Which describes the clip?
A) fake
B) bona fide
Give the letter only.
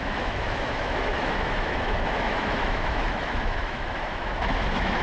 A